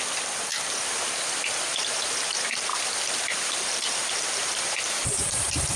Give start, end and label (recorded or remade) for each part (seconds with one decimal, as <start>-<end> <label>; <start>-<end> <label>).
0.0-2.7 recorded; 2.7-5.8 remade